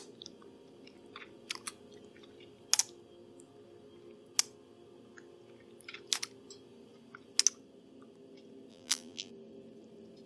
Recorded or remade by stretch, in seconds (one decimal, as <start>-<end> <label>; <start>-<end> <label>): 0.0-8.7 recorded; 8.7-9.3 remade; 9.3-10.3 recorded